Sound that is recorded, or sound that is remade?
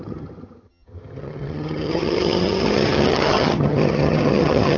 remade